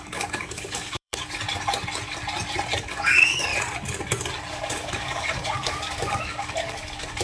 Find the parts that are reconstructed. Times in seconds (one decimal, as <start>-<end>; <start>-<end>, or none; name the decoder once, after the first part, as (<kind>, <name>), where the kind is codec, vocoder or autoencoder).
0.0-1.2 (codec, DAC); 2.8-3.5; 4.5-7.2